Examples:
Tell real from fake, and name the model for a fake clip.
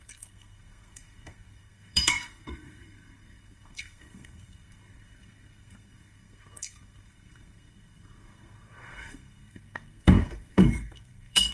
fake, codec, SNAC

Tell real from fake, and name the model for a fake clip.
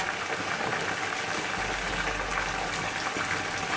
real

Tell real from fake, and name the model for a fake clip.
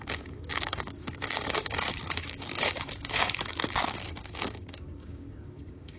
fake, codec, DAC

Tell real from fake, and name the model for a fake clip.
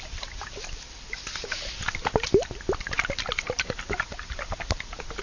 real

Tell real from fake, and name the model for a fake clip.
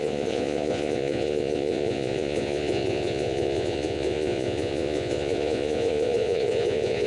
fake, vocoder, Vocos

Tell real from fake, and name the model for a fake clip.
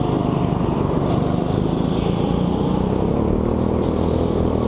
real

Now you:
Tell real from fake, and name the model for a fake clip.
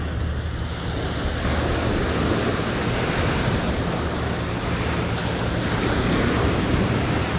real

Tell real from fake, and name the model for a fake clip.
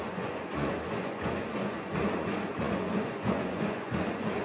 fake, vocoder, Vocos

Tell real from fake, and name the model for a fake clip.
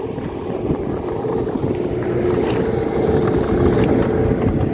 real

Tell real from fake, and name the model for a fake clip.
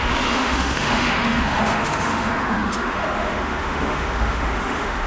fake, autoencoder, DAC-VAE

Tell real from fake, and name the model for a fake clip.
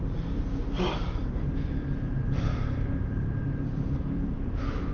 fake, vocoder, BigVGAN v2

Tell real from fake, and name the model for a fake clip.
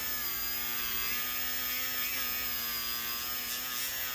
real